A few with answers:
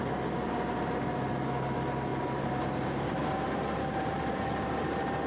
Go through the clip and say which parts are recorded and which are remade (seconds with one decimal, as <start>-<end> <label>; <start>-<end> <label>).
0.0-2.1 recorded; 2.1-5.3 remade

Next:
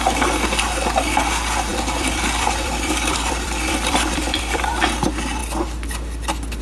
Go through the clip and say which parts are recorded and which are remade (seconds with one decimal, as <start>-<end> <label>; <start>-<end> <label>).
0.0-1.7 recorded; 1.7-4.7 remade; 4.7-6.6 recorded

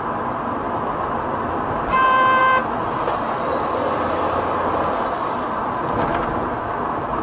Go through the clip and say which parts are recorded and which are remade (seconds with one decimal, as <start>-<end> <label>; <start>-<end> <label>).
0.0-7.2 recorded